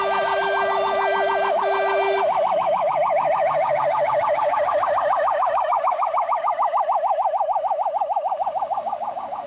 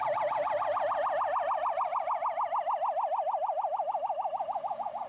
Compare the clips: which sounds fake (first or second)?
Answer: first